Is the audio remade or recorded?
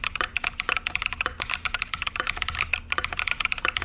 recorded